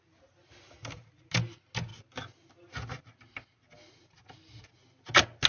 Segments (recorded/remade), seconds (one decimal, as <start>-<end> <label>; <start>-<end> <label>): 0.0-5.5 recorded